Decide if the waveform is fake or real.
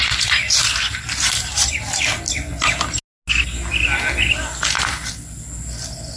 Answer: real